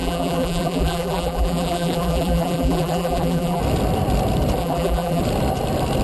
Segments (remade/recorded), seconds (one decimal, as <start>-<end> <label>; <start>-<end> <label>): 0.0-3.6 remade; 3.6-4.6 recorded; 4.6-5.2 remade; 5.2-6.0 recorded